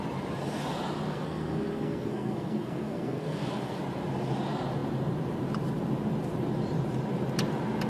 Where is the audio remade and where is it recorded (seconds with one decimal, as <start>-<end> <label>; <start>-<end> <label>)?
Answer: 0.0-1.1 recorded; 1.1-3.8 remade; 3.8-7.9 recorded